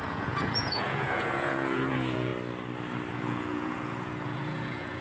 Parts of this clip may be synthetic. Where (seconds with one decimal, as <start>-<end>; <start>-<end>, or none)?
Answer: 0.0-2.3; 3.1-5.0